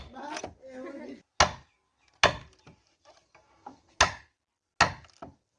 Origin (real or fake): real